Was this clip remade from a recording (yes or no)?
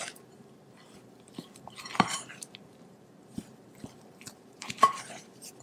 yes